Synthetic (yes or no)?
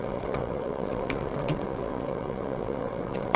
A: yes